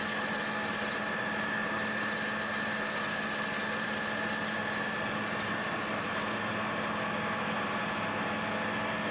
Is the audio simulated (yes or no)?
no